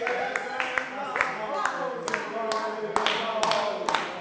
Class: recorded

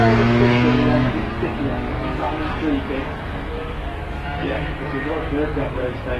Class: remade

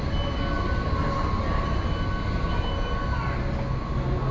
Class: recorded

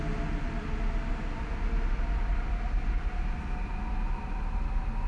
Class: recorded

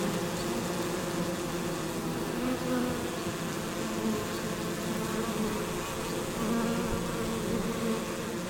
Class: recorded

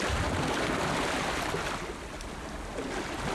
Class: recorded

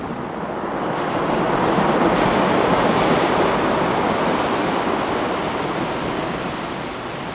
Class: recorded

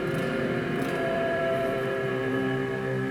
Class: remade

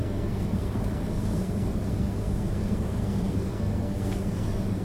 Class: remade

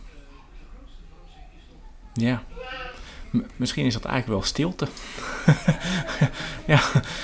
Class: recorded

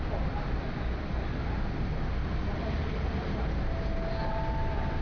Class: recorded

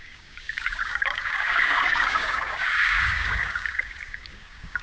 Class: remade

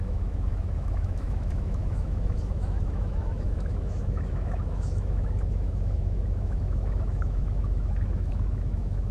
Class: remade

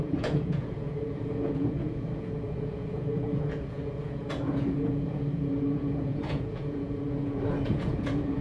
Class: remade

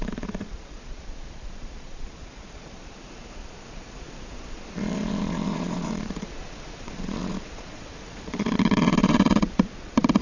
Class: remade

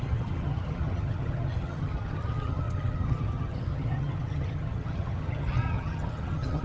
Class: remade